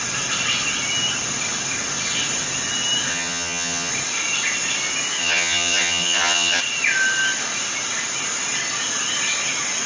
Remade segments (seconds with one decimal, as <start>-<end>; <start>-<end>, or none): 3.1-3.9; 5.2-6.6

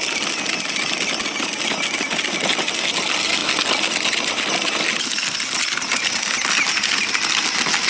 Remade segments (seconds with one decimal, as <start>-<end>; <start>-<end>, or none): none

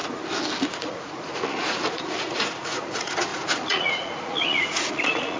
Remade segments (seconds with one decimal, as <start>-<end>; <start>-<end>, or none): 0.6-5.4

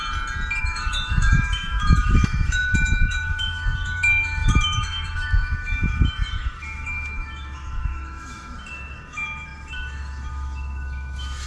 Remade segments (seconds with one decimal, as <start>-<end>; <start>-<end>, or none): 0.6-11.5

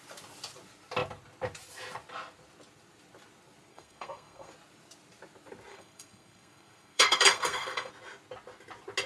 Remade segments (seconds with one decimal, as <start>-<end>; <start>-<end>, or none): 3.7-4.5; 5.7-7.9